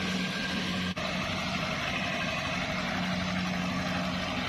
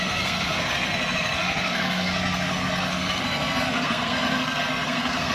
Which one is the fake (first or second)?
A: second